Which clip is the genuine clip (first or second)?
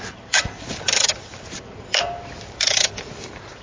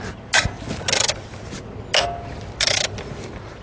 second